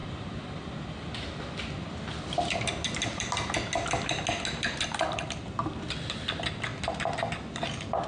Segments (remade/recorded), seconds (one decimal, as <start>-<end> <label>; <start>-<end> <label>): 0.0-0.5 remade; 0.5-8.1 recorded